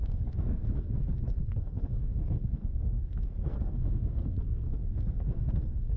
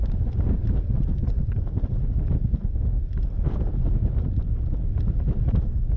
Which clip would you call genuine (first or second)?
second